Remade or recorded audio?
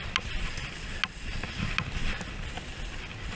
recorded